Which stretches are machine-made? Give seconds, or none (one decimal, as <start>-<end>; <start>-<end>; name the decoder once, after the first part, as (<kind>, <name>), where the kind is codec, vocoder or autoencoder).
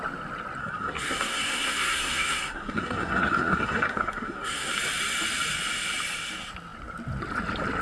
0.6-4.7 (codec, SNAC)